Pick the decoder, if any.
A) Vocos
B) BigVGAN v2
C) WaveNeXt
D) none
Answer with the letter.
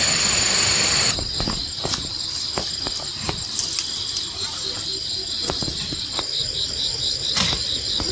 B